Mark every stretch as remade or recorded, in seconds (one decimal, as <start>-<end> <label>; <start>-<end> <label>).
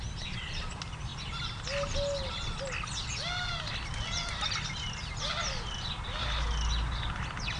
0.0-7.6 recorded